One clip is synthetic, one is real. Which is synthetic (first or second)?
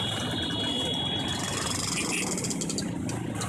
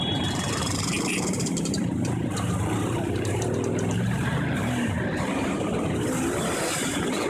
second